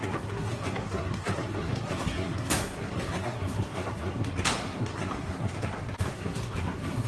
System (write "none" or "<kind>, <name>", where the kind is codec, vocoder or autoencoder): codec, SNAC